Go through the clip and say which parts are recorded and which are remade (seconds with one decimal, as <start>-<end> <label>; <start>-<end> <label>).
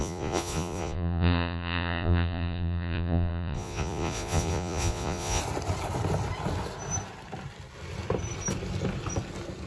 0.0-5.4 remade; 5.4-9.7 recorded